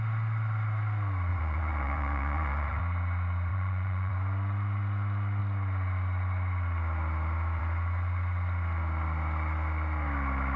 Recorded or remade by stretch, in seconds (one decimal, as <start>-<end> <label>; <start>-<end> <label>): 0.0-1.3 recorded; 1.3-2.8 remade; 2.8-3.5 recorded; 3.5-4.1 remade; 4.1-10.6 recorded